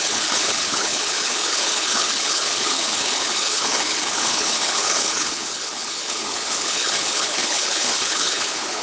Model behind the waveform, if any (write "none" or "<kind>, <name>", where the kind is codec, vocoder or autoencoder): codec, HILCodec